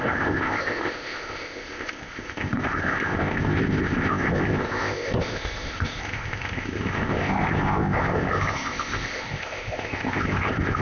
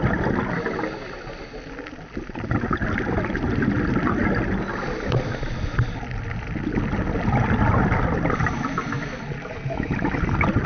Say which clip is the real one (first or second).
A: second